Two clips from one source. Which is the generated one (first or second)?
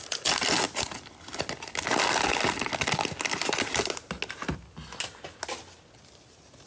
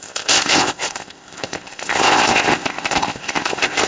second